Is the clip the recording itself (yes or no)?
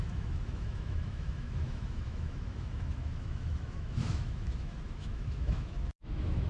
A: no